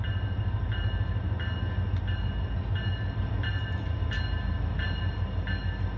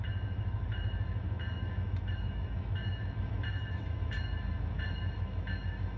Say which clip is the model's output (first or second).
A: second